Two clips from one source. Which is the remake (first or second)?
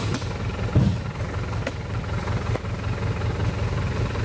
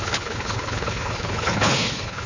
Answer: second